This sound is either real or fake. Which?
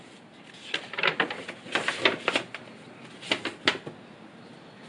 real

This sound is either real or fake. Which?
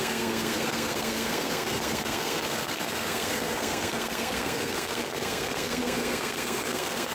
fake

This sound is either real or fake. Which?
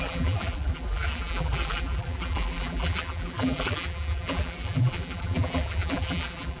fake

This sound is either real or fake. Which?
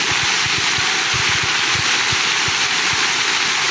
real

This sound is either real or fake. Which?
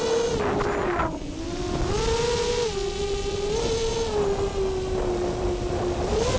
real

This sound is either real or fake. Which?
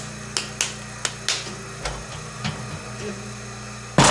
real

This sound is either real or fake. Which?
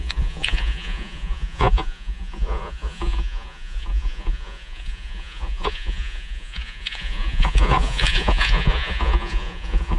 fake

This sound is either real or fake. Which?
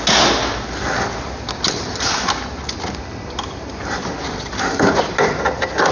real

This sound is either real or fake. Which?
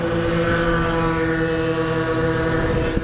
real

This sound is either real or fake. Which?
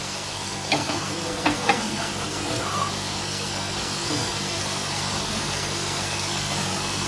fake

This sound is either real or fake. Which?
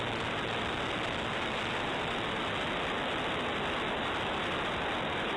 real